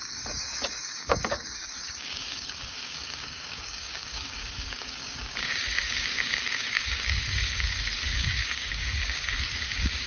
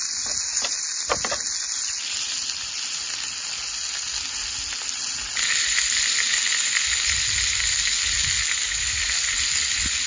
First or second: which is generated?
first